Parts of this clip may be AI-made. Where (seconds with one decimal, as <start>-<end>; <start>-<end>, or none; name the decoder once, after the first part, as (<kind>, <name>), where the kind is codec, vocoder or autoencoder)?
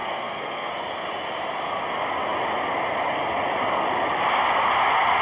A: 0.0-0.7 (codec, SNAC)